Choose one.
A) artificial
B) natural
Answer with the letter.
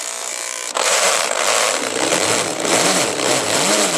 A